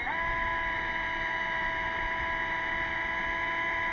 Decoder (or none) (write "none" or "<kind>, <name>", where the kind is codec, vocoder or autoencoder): none